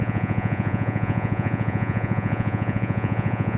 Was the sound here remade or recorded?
remade